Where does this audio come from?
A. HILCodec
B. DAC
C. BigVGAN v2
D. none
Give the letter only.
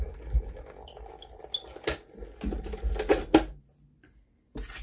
D